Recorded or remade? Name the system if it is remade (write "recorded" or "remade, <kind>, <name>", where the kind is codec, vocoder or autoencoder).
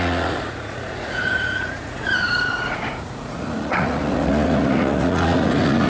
remade, vocoder, Vocos